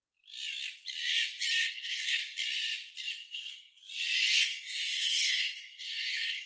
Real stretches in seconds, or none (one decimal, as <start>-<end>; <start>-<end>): 0.0-1.6; 2.2-3.1; 3.8-4.4